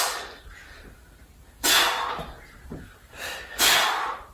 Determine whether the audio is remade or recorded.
recorded